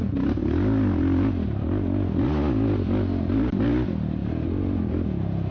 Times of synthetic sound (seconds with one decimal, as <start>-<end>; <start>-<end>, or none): none